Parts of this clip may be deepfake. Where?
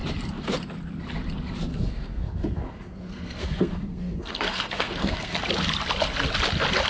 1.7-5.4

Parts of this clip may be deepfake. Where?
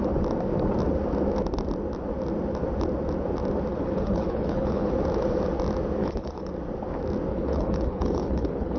3.7-4.9; 6.0-6.5; 7.3-8.8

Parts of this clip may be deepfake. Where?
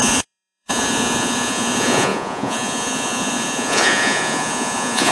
0.0-5.1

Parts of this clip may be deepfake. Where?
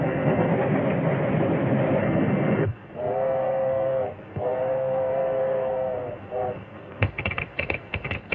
0.0-0.5; 2.0-8.3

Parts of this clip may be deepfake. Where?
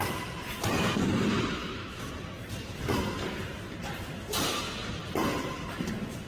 1.6-2.1